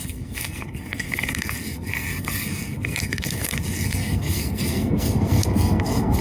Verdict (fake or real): fake